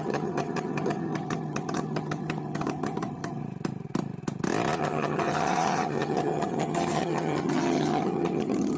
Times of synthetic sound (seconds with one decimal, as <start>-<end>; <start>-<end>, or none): 0.0-3.4; 4.8-8.8